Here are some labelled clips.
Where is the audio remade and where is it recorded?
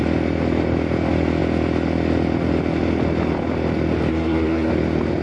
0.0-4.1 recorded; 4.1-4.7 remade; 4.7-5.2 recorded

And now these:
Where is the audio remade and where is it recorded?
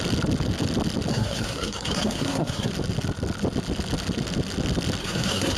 0.0-1.1 recorded; 1.1-2.7 remade; 2.7-5.0 recorded; 5.0-5.6 remade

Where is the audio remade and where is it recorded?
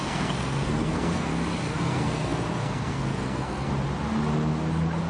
0.0-1.3 remade; 1.3-1.8 recorded; 1.8-3.7 remade; 3.7-5.1 recorded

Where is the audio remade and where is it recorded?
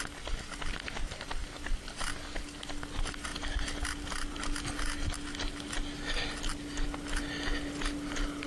0.0-8.5 recorded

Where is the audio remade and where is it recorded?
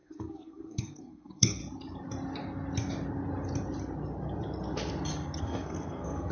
0.0-1.6 remade; 1.6-5.4 recorded; 5.4-6.3 remade